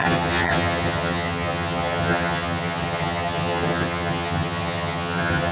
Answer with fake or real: fake